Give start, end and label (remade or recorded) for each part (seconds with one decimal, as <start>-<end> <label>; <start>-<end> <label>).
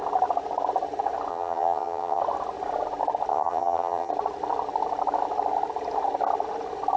0.0-1.3 recorded; 1.3-2.2 remade; 2.2-3.3 recorded; 3.3-4.1 remade; 4.1-7.0 recorded